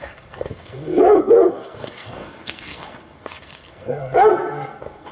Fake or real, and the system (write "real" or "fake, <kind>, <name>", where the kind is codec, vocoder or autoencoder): fake, codec, SNAC